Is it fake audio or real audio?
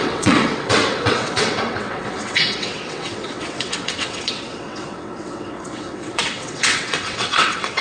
fake